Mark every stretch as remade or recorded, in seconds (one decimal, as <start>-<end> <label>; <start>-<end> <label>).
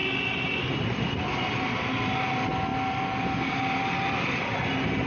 0.0-5.1 recorded